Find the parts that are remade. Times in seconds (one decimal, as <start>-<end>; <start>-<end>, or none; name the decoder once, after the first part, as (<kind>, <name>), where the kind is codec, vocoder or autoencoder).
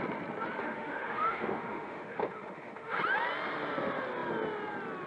0.6-3.0 (autoencoder, DAC-VAE)